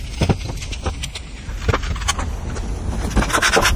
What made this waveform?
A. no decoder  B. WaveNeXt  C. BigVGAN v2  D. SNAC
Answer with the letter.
A